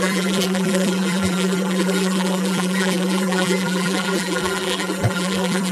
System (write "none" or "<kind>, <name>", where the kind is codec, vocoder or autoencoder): vocoder, BigVGAN v2